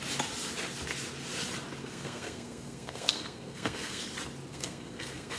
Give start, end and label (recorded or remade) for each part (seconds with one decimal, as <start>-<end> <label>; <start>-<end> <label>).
0.0-1.8 recorded; 1.8-4.0 remade; 4.0-4.5 recorded; 4.5-5.4 remade